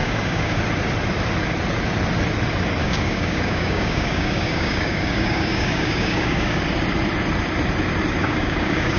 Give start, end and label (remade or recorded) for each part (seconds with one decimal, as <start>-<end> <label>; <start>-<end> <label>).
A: 0.0-0.6 remade; 0.6-2.8 recorded; 2.8-6.6 remade; 6.6-8.2 recorded; 8.2-9.0 remade